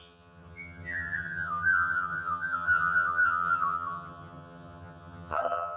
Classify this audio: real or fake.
fake